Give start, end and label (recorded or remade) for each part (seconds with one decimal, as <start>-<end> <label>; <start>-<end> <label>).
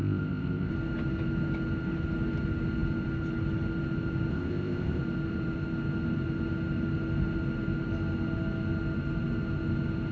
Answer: 0.0-0.7 remade; 0.7-4.3 recorded; 4.3-5.0 remade; 5.0-10.1 recorded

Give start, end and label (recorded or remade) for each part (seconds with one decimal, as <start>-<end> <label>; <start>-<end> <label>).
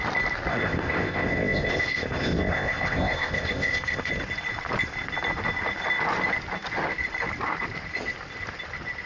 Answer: 0.0-0.5 recorded; 0.5-4.1 remade; 4.1-9.1 recorded